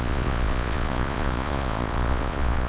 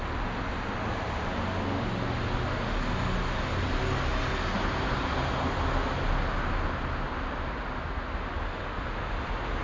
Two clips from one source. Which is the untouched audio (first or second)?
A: second